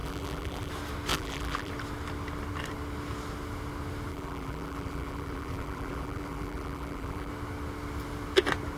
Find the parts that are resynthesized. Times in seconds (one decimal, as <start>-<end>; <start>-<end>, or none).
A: 0.0-0.7; 1.1-1.7; 4.1-7.3